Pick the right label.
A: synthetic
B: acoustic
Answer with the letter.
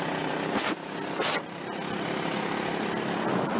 B